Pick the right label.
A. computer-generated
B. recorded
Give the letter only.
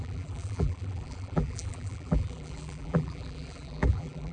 A